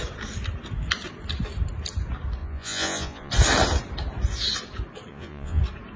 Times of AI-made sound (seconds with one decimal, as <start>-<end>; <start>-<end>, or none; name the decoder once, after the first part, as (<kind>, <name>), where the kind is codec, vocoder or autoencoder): 2.4-3.3 (vocoder, Vocos); 5.1-5.6